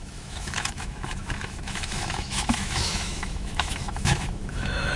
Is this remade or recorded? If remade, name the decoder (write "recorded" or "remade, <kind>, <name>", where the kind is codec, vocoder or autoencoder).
remade, autoencoder, DAC-VAE